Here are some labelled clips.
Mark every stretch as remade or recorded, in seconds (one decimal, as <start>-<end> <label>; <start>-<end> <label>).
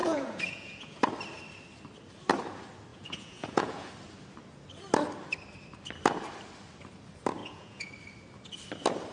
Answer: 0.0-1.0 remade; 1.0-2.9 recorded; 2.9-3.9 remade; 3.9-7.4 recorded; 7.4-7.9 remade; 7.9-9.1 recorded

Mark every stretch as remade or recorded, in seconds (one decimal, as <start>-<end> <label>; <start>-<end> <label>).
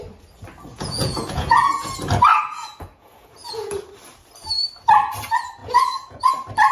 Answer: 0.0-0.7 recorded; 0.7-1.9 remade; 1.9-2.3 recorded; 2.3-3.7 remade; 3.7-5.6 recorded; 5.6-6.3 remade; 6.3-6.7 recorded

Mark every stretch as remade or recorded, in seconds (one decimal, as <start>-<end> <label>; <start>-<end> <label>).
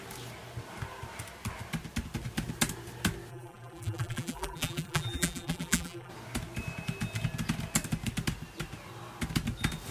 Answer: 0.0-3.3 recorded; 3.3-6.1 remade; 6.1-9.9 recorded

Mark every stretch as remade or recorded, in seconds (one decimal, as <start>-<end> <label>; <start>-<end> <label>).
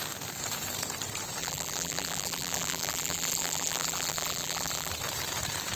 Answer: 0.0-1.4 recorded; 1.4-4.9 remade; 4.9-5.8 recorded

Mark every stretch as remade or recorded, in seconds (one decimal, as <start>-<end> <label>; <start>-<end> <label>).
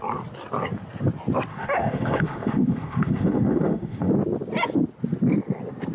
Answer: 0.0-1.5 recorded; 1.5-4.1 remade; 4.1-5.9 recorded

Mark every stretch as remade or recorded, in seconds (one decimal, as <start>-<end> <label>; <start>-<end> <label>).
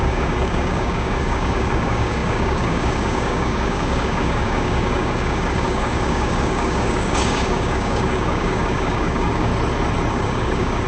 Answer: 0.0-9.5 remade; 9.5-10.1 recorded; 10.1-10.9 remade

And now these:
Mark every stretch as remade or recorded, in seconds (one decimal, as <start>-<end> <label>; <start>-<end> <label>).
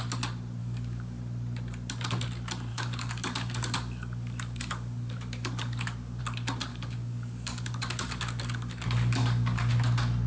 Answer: 0.0-0.6 recorded; 0.6-1.2 remade; 1.2-2.7 recorded; 2.7-6.2 remade; 6.2-6.7 recorded; 6.7-9.7 remade; 9.7-10.3 recorded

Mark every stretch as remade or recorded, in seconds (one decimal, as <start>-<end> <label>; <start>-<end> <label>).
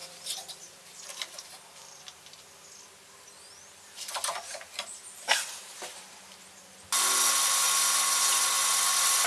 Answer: 0.0-2.0 remade; 2.0-4.5 recorded; 4.5-5.4 remade; 5.4-9.3 recorded